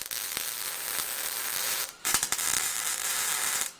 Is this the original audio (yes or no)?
no